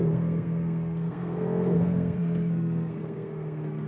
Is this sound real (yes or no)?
no